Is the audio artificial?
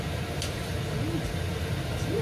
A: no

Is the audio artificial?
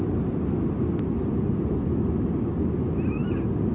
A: no